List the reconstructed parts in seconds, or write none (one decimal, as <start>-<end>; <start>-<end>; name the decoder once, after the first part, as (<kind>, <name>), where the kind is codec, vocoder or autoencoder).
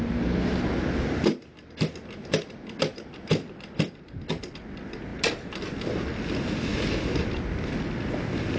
none